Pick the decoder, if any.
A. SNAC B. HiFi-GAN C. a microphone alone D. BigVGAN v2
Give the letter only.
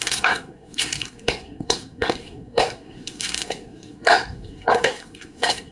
A